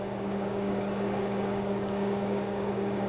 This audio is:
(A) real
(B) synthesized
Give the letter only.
B